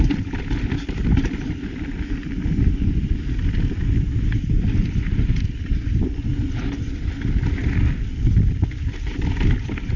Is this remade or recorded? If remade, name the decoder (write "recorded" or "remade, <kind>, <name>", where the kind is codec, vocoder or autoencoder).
recorded